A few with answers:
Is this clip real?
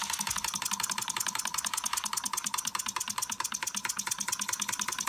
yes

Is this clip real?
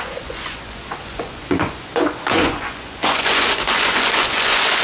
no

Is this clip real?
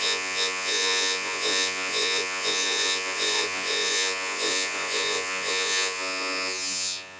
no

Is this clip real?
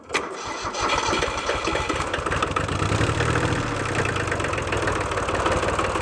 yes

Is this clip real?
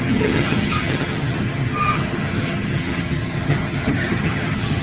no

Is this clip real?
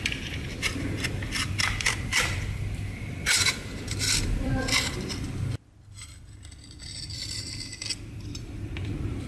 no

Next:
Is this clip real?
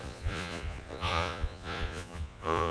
no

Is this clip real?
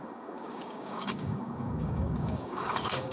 no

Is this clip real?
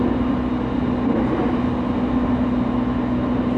yes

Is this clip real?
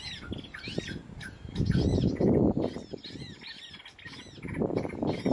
yes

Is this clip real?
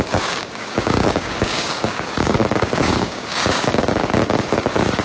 no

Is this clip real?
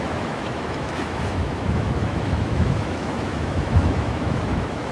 no